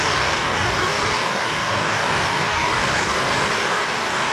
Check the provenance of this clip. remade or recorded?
remade